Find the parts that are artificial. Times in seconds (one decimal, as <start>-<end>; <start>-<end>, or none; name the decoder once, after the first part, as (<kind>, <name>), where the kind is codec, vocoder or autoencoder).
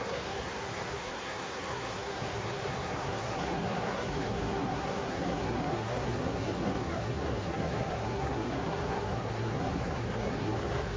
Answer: 0.0-11.0 (codec, SNAC)